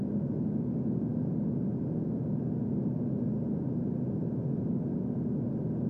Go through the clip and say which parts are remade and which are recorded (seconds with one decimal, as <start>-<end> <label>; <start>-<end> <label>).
0.0-5.9 recorded